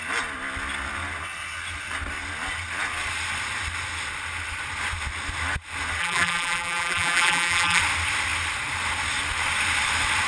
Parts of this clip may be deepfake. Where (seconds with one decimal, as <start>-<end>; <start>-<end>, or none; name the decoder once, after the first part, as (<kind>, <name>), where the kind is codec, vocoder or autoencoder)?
6.0-7.8 (vocoder, BigVGAN v2)